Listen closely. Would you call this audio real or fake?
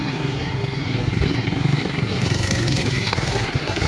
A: fake